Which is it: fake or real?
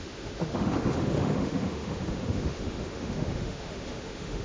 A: fake